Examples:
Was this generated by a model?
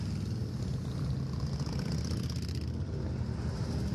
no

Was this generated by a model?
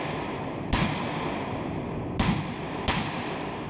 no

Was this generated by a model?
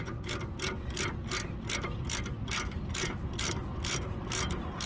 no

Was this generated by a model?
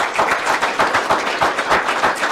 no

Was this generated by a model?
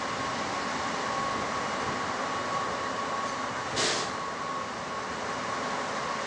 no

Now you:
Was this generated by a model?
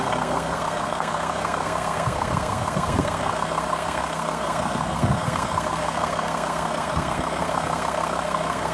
yes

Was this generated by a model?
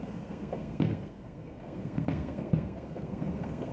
yes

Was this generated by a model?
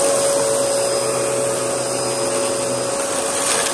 no